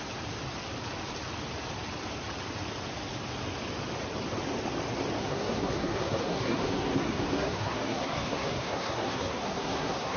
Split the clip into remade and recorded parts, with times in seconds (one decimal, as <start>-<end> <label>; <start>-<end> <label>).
0.0-5.2 recorded; 5.2-10.2 remade